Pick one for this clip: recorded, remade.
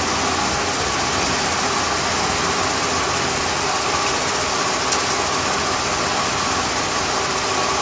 recorded